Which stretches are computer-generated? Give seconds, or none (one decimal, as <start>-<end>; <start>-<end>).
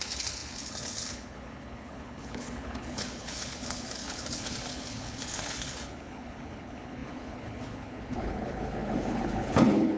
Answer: 0.0-10.0